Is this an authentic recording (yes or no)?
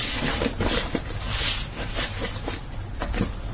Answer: yes